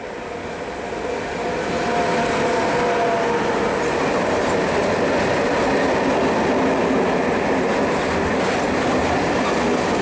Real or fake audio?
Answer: real